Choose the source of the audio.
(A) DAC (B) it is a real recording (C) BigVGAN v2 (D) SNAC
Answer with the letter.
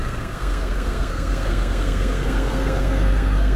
D